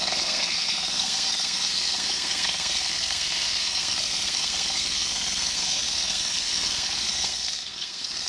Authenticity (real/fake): fake